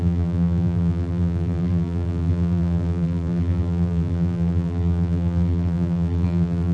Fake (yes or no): yes